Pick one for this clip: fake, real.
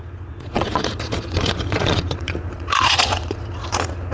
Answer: fake